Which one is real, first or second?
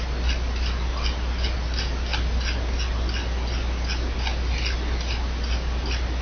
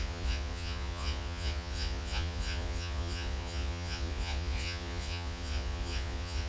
first